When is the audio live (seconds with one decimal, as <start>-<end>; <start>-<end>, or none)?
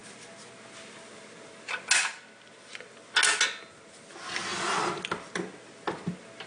0.0-6.5